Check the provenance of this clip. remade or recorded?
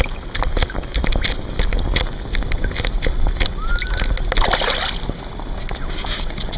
recorded